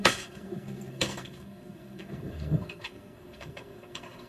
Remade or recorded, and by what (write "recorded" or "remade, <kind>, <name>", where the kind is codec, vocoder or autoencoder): remade, codec, SNAC